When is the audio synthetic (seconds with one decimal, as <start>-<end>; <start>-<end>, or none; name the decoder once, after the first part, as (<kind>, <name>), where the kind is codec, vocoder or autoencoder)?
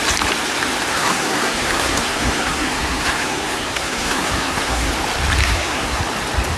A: 0.9-4.9 (codec, SNAC); 5.4-6.0